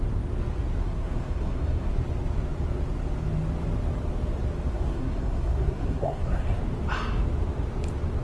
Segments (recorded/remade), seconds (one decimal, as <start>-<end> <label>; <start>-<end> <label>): 0.0-0.8 recorded; 0.8-1.9 remade; 1.9-4.7 recorded; 4.7-6.6 remade; 6.6-8.2 recorded